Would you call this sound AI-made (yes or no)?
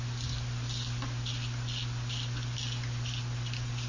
no